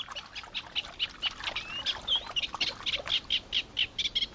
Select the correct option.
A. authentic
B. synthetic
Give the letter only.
A